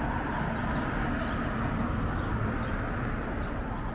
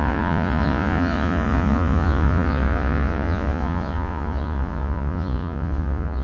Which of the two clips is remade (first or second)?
second